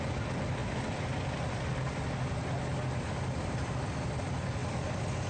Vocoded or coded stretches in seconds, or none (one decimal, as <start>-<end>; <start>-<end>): none

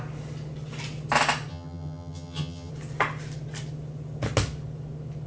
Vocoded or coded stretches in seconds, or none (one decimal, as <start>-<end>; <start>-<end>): 1.5-2.7

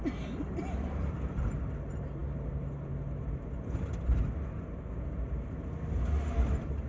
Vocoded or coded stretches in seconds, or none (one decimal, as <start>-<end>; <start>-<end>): none

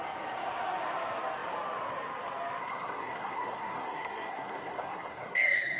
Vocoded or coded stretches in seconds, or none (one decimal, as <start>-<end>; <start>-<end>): 2.6-5.8

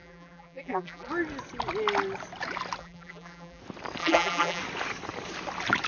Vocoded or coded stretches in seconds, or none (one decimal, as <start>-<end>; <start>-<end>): 0.0-1.1; 2.8-3.6; 4.0-4.6

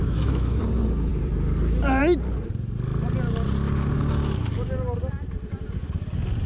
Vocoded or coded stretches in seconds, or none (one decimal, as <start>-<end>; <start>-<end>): 0.0-0.6

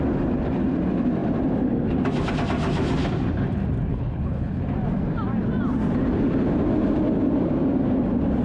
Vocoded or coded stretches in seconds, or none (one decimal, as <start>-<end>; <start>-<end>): 3.9-4.6